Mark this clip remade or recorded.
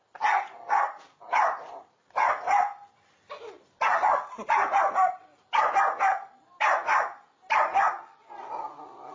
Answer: recorded